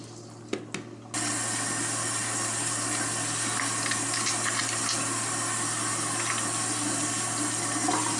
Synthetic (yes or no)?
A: no